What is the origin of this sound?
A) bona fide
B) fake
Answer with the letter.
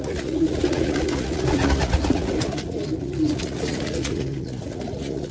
B